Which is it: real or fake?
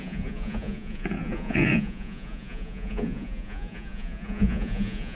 fake